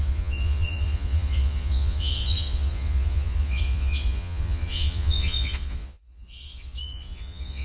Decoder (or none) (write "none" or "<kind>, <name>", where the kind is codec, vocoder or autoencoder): vocoder, Vocos